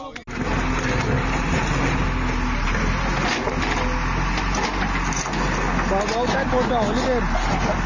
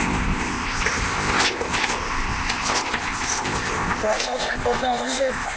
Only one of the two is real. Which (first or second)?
first